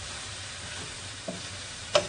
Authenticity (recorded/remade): remade